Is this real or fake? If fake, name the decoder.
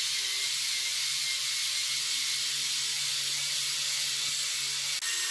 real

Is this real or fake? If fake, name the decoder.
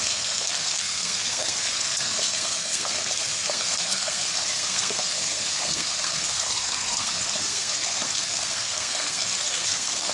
fake, codec, SNAC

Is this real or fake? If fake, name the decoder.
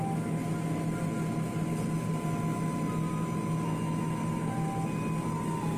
real